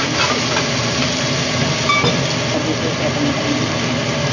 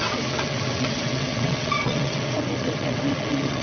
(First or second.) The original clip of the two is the first